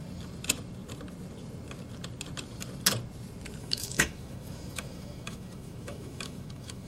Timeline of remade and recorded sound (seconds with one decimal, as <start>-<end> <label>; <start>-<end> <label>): 0.0-3.6 recorded; 3.6-6.9 remade